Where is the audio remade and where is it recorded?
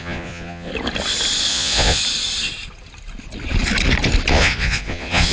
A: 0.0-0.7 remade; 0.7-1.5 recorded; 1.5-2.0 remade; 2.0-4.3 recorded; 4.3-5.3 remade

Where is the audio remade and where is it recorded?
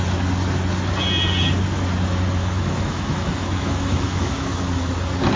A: 0.0-2.4 recorded; 2.4-4.9 remade; 4.9-5.4 recorded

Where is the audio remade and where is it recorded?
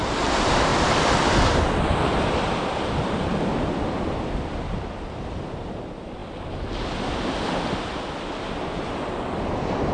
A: 0.0-6.2 remade; 6.2-7.6 recorded; 7.6-9.9 remade